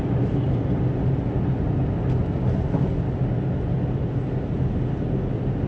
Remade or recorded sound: recorded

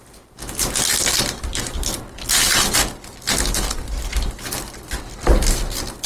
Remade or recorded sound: recorded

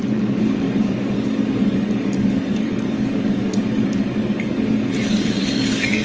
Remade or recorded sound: remade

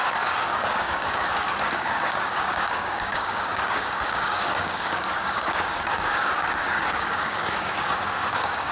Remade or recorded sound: remade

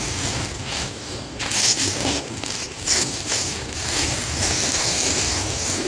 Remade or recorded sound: remade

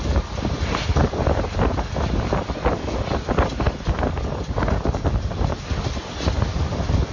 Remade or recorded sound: recorded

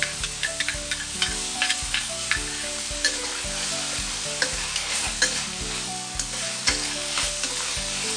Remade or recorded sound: remade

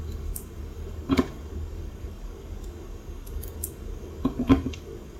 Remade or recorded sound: remade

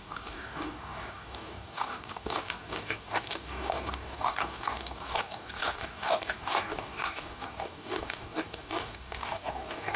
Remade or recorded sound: remade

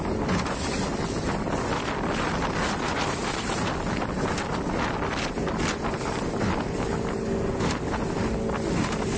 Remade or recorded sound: recorded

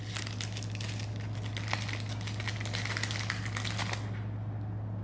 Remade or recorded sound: recorded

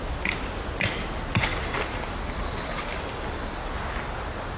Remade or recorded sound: recorded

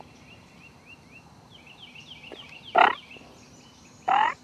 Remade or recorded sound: recorded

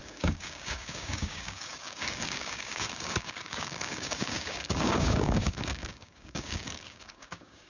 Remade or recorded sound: remade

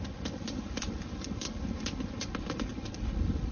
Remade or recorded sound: recorded